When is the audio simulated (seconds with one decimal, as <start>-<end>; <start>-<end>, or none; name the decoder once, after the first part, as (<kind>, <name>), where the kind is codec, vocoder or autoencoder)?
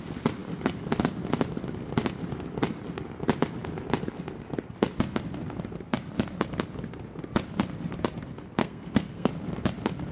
8.6-9.3 (codec, SNAC)